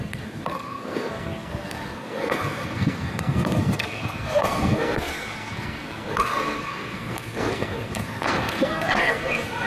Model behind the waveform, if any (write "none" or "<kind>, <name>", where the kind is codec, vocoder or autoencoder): codec, SNAC